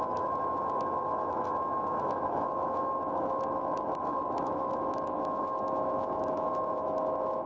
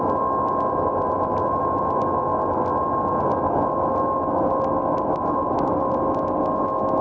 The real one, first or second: second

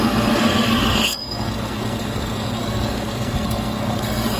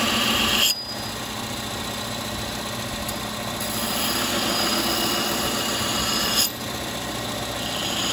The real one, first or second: second